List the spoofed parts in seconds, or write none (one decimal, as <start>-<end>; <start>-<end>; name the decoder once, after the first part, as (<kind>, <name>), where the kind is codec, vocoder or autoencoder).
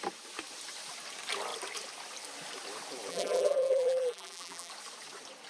3.1-4.7 (vocoder, BigVGAN v2)